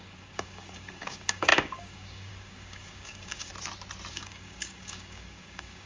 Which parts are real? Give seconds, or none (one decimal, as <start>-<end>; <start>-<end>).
3.5-4.1